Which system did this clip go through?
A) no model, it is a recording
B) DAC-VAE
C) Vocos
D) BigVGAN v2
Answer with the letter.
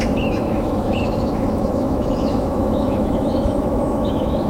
B